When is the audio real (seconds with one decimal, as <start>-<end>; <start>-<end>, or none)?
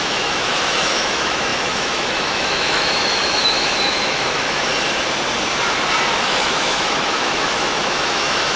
4.7-6.2